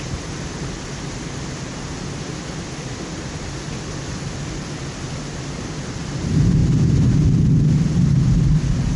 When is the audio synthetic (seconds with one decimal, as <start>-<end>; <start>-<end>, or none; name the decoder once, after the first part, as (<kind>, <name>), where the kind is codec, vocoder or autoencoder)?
none